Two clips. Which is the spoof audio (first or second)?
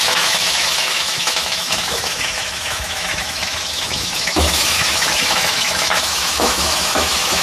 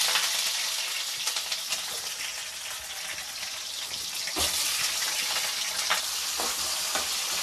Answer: first